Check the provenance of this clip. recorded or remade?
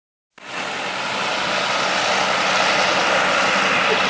recorded